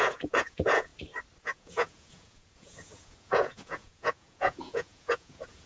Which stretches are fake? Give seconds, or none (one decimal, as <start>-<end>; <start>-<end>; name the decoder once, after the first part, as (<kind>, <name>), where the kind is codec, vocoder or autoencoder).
0.0-0.9 (vocoder, Vocos); 1.4-5.7